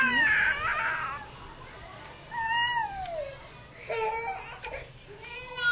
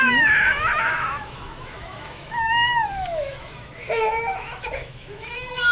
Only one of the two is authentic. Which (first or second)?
first